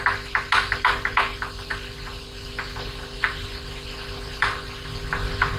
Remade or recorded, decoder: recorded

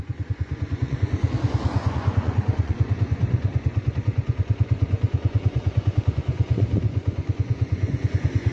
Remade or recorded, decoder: remade, vocoder, Vocos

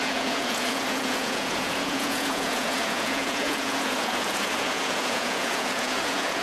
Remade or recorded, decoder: remade, vocoder, Vocos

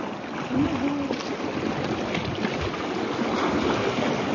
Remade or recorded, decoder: recorded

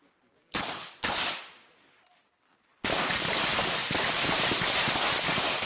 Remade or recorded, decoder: recorded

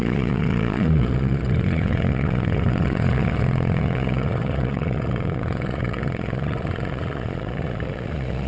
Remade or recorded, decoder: remade, vocoder, Vocos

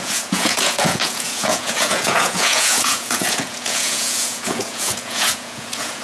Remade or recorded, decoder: remade, vocoder, Vocos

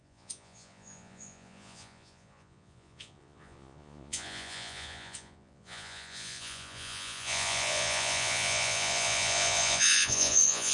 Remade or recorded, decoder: remade, vocoder, Vocos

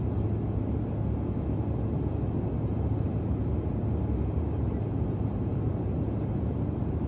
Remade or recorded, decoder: recorded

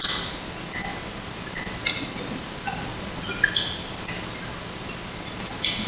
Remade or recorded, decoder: recorded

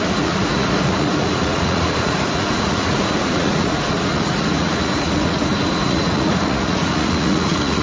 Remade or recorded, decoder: remade, vocoder, Vocos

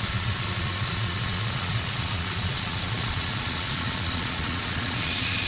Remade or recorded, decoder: remade, vocoder, Vocos